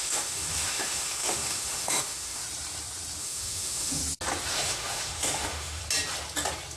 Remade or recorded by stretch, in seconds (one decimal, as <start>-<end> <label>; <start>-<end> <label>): 0.0-2.4 remade; 2.4-3.2 recorded; 3.2-4.0 remade; 4.0-4.5 recorded; 4.5-5.8 remade; 5.8-6.8 recorded